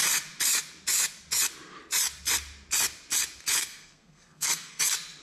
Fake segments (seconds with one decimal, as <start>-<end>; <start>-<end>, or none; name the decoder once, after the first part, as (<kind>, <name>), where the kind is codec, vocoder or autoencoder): 3.6-4.8 (codec, SNAC)